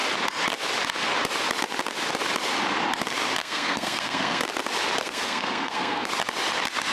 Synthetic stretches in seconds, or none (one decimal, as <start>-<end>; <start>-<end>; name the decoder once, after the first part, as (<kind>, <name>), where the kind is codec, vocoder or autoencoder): 3.4-4.4 (codec, SNAC); 5.0-6.1